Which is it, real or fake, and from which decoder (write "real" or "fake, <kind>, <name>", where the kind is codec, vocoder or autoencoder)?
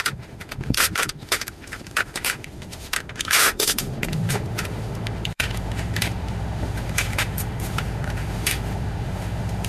fake, autoencoder, DAC-VAE